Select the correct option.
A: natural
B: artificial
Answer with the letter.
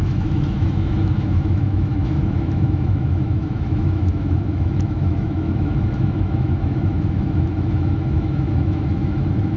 B